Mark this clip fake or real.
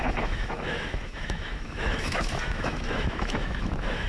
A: fake